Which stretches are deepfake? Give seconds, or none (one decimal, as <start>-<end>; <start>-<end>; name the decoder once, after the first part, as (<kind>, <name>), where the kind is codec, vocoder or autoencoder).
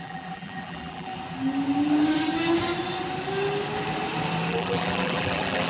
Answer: 0.0-1.1 (vocoder, BigVGAN v2); 4.5-5.7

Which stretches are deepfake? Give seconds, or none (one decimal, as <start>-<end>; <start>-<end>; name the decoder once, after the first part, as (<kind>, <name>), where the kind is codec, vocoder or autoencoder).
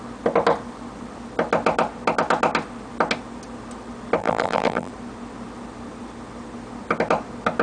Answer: 4.2-4.9 (vocoder, BigVGAN v2)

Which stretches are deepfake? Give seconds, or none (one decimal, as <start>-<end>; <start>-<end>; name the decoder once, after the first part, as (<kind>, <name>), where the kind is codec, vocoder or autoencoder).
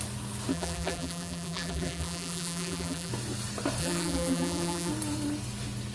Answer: 0.5-3.1 (vocoder, BigVGAN v2); 3.8-4.9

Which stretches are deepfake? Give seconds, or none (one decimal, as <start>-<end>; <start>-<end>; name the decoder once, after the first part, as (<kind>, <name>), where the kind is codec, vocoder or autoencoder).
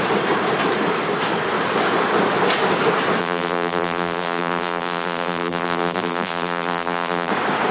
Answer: 3.2-7.3 (vocoder, BigVGAN v2)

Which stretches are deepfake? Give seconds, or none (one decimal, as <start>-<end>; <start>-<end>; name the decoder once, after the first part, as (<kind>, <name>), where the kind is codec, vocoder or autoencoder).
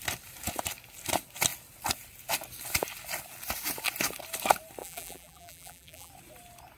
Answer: 4.8-6.1 (vocoder, BigVGAN v2)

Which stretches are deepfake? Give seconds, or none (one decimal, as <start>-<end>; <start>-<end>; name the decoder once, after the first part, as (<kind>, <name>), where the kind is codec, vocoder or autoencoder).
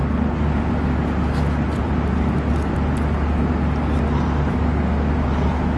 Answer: 0.0-3.5 (vocoder, BigVGAN v2)